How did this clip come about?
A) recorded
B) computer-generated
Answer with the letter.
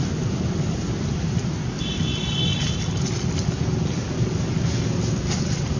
A